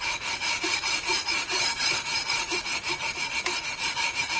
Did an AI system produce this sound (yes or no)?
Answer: yes